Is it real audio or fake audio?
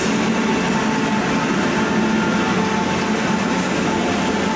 real